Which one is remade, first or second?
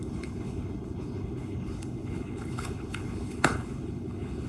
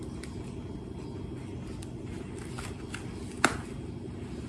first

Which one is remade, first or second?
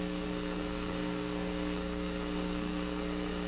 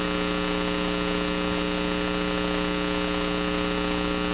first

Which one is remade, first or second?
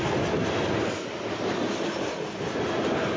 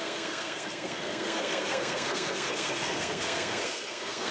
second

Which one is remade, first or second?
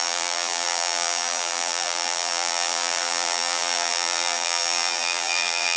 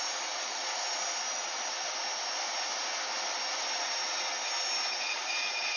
first